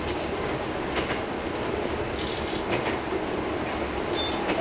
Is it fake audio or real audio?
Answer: real